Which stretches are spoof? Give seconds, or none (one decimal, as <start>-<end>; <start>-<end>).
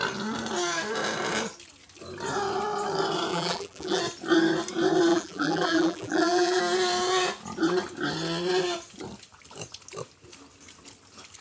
3.3-4.0; 5.1-6.6